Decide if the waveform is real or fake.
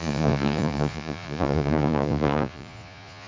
fake